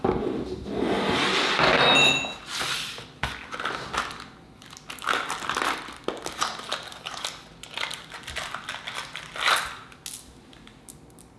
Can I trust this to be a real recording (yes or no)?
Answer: yes